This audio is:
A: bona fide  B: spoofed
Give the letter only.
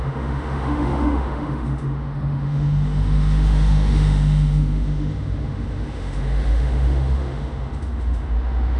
B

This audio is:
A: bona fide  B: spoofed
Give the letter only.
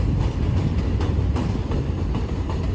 A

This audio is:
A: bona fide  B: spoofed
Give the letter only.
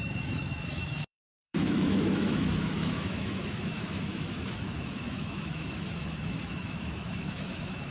B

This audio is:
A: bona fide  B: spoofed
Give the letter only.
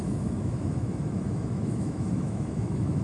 B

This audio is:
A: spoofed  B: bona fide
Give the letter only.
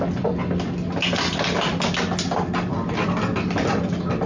B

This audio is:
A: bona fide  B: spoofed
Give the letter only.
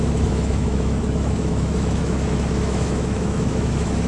B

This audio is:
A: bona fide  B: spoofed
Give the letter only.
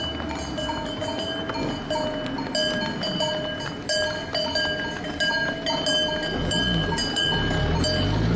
A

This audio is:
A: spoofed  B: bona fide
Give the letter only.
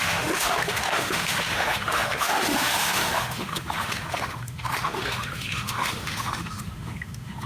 A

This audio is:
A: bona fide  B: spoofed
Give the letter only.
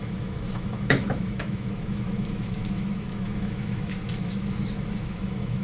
B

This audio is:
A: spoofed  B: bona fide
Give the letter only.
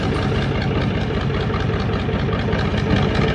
B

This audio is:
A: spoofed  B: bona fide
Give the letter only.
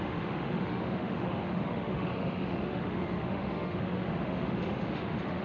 A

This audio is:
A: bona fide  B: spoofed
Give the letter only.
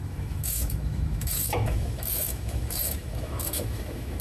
B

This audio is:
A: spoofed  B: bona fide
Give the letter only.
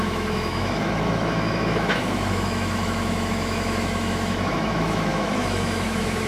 A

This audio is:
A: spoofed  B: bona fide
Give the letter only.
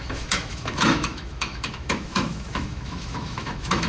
A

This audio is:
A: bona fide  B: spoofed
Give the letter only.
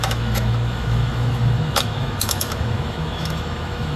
B